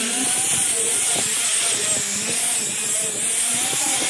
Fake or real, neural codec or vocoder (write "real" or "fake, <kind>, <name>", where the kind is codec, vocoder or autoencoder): real